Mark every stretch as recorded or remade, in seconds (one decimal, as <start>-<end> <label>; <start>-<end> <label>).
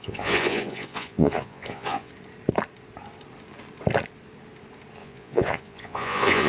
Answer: 0.0-2.1 remade; 2.1-5.0 recorded; 5.0-6.5 remade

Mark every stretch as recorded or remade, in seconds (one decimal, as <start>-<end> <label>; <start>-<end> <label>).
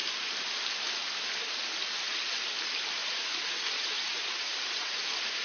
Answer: 0.0-3.0 recorded; 3.0-5.0 remade; 5.0-5.4 recorded